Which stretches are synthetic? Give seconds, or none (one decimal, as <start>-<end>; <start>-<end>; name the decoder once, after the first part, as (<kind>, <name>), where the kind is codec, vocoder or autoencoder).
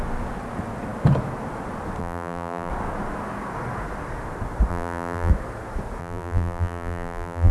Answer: 2.0-2.7 (vocoder, BigVGAN v2); 4.7-5.3; 6.0-7.5